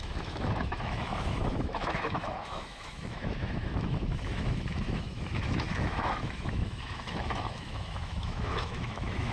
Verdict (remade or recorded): remade